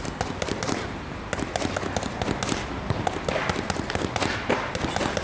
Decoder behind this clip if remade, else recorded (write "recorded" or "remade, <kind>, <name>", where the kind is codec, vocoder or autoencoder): recorded